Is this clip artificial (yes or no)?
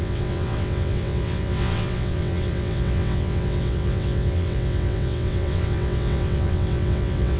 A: yes